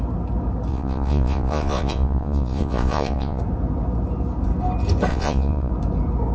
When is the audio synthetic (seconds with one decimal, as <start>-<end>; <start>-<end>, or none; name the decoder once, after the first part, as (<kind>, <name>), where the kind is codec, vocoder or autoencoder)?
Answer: 0.7-3.4 (vocoder, Vocos); 5.1-5.7